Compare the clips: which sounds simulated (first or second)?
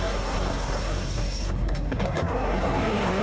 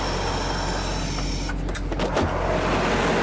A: first